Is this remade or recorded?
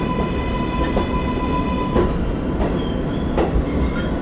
recorded